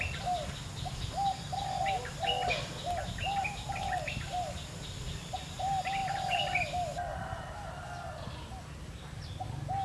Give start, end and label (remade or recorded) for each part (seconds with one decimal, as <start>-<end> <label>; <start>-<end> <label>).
0.0-9.8 recorded